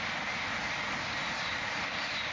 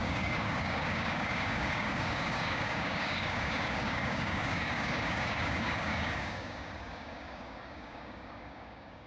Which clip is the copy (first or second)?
second